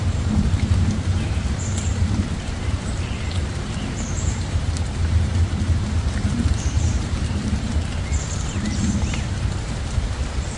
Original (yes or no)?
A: no